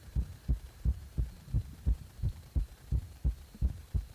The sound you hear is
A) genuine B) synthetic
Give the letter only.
B